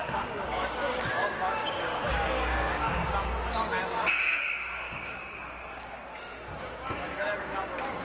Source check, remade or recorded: remade